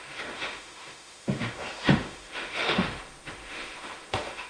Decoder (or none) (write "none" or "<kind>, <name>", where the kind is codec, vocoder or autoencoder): autoencoder, DAC-VAE